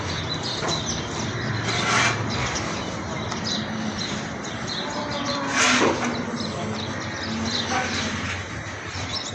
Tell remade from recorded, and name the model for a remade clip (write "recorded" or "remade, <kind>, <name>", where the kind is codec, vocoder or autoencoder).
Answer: recorded